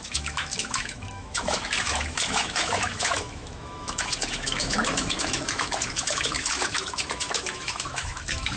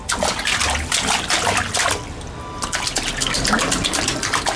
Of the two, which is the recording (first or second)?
second